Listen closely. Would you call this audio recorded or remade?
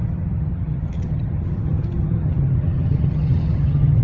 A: remade